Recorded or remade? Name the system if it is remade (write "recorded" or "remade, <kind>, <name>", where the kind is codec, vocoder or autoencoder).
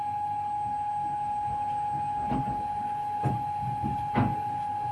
recorded